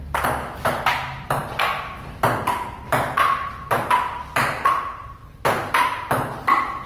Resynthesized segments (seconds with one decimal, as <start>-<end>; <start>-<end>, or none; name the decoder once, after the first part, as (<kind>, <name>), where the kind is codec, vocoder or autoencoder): none